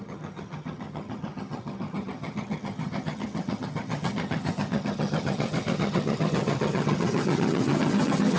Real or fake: fake